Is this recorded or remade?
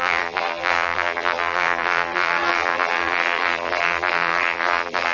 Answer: remade